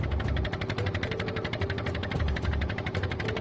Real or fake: fake